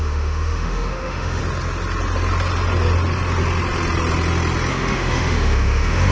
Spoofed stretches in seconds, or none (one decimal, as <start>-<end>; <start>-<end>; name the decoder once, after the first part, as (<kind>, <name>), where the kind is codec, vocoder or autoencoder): 0.0-1.4 (autoencoder, DAC-VAE); 4.7-6.1